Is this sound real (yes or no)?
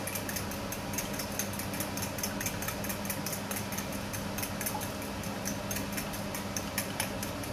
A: yes